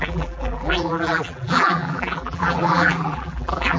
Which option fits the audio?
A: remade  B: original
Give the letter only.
A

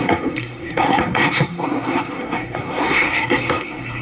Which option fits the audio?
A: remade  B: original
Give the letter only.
A